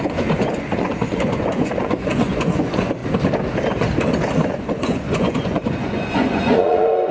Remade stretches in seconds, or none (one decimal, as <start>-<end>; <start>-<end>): 0.0-3.0; 4.5-7.1